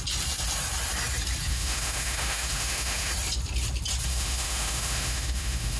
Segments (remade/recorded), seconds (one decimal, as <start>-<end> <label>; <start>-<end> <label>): 0.0-1.5 recorded; 1.5-3.1 remade; 3.1-4.1 recorded; 4.1-5.8 remade